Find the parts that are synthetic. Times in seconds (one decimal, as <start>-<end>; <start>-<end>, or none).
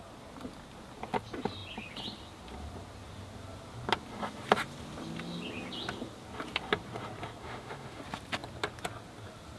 7.4-8.0